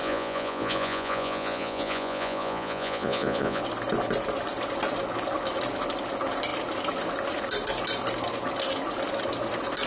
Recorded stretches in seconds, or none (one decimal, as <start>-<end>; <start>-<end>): 3.6-9.9